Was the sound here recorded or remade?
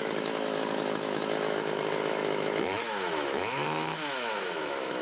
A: remade